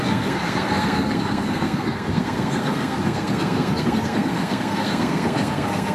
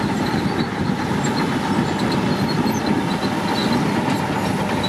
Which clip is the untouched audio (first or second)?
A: second